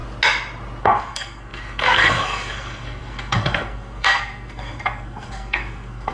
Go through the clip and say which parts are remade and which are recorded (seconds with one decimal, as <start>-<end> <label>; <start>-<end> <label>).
0.0-0.8 recorded; 0.8-6.1 remade